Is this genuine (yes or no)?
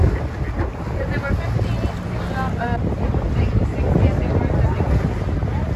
yes